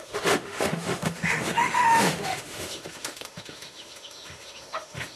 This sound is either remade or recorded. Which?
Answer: remade